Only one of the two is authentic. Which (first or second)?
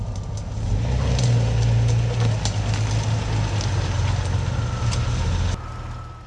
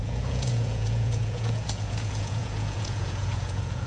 first